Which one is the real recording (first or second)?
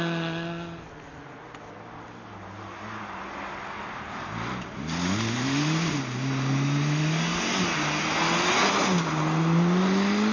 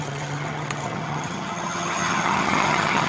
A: first